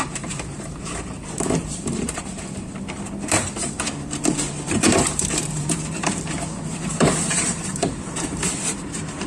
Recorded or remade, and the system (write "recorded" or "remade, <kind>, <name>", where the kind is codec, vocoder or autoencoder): remade, vocoder, BigVGAN v2